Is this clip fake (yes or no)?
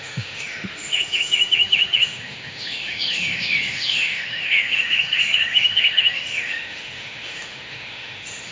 yes